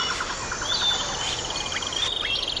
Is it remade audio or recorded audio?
recorded